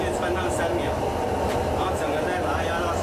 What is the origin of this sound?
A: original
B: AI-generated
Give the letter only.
A